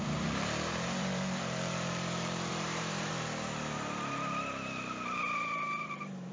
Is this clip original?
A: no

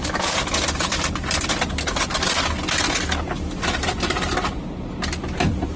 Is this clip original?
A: yes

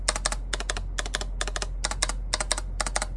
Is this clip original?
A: yes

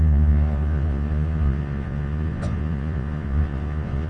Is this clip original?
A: no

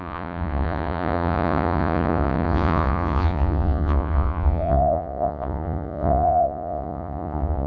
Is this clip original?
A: no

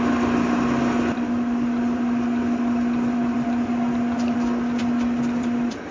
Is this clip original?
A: yes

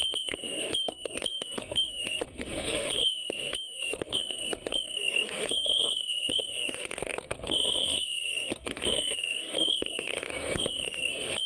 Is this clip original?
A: no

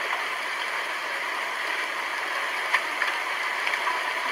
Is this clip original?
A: yes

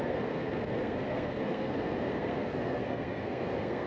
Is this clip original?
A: no